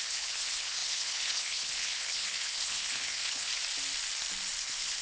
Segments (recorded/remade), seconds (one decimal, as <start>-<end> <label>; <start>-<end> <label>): 0.0-3.5 remade; 3.5-4.6 recorded; 4.6-5.0 remade